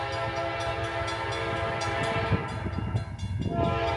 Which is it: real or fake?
real